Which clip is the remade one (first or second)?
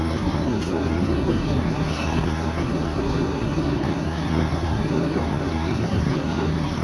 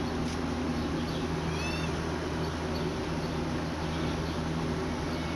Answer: first